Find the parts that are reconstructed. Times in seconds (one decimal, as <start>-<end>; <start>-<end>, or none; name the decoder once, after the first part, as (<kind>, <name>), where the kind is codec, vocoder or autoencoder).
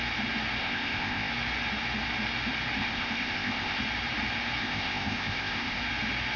0.6-1.3 (codec, ZipCodec); 2.8-3.8; 4.6-5.8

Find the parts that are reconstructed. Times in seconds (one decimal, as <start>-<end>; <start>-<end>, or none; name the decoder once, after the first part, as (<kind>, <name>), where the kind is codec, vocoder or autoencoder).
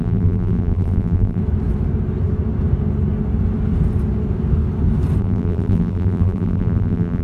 0.0-1.4 (vocoder, BigVGAN v2); 5.2-7.2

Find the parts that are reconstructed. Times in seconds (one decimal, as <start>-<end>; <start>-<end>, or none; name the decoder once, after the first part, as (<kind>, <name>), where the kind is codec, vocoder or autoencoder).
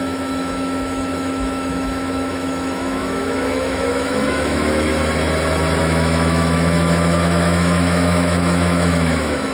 0.0-4.9 (autoencoder, DAC-VAE); 5.8-9.5